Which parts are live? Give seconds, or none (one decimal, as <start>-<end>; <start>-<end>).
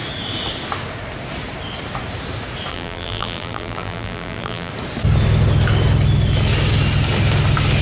0.0-2.7; 4.7-7.8